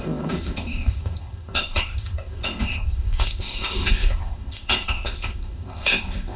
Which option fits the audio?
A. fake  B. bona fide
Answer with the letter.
A